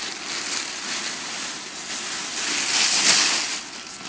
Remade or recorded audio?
recorded